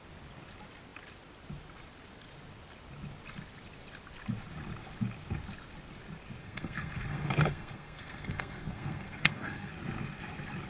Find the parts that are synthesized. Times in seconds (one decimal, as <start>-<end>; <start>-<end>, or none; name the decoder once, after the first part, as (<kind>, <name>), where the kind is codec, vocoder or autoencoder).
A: 6.4-9.7 (codec, SNAC)